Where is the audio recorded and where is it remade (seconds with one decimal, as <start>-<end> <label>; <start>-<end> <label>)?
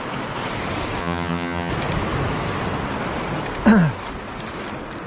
0.0-1.0 recorded; 1.0-1.7 remade; 1.7-5.1 recorded